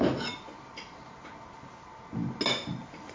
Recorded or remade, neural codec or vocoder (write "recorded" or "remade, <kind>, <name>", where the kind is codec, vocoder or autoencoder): recorded